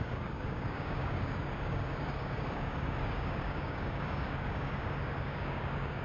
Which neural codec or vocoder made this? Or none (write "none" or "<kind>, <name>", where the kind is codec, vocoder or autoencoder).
codec, DAC